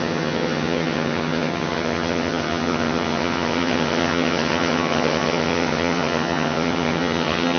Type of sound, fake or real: fake